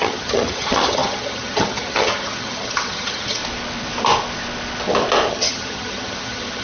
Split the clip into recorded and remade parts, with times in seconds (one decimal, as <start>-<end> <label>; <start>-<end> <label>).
0.0-3.4 remade; 3.4-5.3 recorded; 5.3-6.6 remade